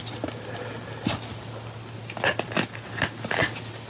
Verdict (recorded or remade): recorded